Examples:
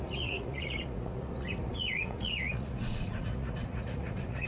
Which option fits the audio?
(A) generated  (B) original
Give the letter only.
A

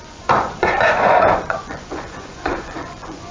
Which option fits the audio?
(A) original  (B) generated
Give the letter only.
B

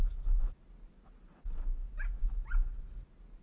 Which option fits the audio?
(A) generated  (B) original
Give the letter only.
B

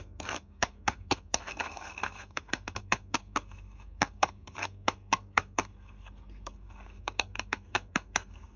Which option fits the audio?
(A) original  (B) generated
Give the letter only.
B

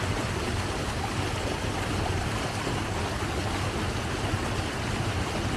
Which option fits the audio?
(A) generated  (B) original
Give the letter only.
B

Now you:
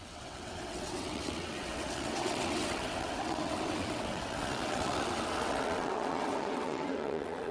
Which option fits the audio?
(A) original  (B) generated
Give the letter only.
B